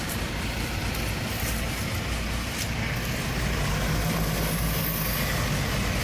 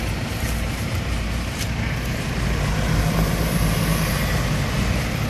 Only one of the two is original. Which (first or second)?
first